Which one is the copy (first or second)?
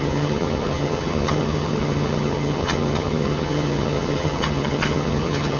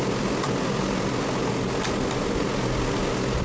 first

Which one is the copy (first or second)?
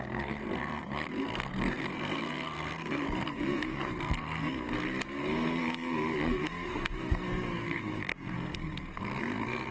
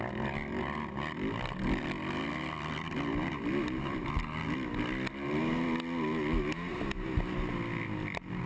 first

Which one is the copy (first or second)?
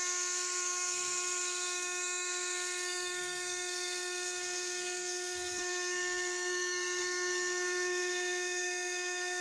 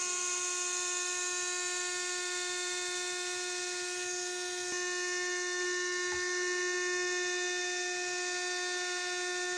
first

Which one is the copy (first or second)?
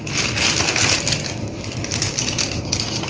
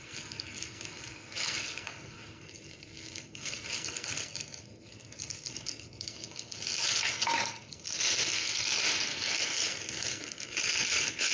second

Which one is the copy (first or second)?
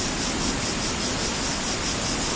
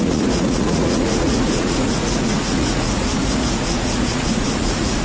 second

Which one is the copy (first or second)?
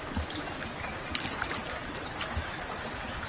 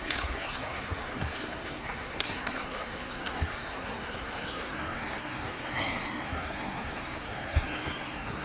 second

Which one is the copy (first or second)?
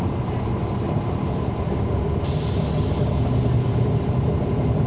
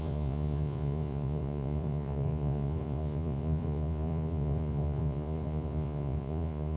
second